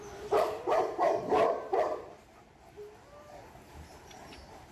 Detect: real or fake fake